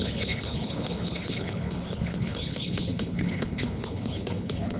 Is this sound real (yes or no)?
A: no